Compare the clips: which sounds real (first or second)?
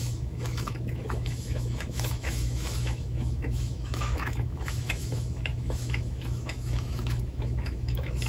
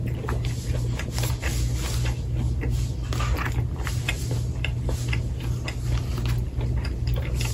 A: second